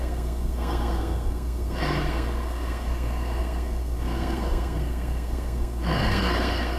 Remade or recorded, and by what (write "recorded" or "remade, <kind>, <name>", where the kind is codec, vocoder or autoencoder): remade, codec, SNAC